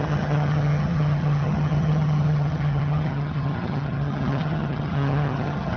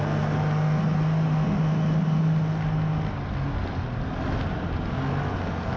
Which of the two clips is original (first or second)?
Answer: second